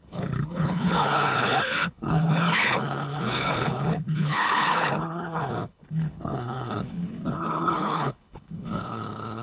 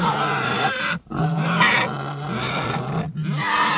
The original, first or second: second